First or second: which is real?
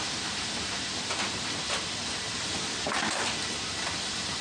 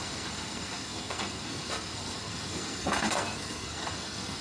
first